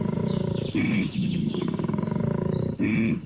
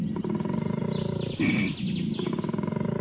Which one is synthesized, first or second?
first